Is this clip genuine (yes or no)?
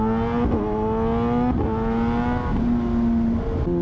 yes